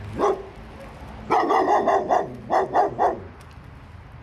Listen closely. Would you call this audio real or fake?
real